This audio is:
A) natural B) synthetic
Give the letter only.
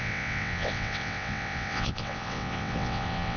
B